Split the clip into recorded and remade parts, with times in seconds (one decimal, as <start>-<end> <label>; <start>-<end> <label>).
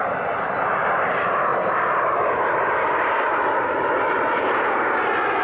0.0-5.4 recorded